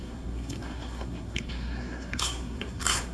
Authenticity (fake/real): fake